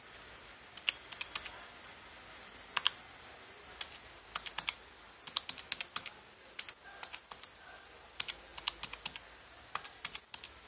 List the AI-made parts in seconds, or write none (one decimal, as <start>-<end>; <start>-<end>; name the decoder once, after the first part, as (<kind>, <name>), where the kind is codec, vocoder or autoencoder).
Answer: none

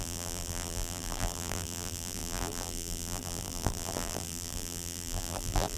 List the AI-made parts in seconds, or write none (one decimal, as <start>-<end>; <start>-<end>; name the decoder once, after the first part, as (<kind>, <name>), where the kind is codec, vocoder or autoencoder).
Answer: 0.0-5.8 (vocoder, BigVGAN v2)

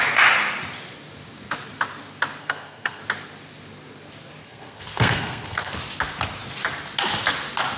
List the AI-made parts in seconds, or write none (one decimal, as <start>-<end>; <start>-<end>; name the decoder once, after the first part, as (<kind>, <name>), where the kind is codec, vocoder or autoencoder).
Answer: 2.4-3.0 (codec, SNAC); 4.4-5.7